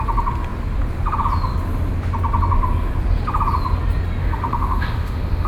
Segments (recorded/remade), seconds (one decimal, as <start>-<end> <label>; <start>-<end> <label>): 0.0-4.2 recorded; 4.2-5.5 remade